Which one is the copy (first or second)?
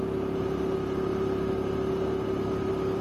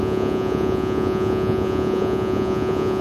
second